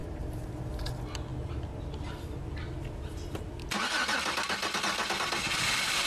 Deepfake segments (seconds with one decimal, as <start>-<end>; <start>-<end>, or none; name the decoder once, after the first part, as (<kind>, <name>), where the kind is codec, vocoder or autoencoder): 0.0-0.9 (vocoder, BigVGAN v2)